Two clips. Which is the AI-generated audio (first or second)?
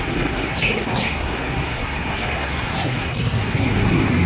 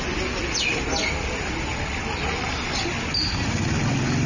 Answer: first